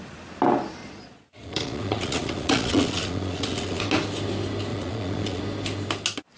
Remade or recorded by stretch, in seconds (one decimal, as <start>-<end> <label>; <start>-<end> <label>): 0.0-0.8 recorded; 0.8-3.8 remade; 3.8-4.7 recorded; 4.7-5.4 remade; 5.4-6.4 recorded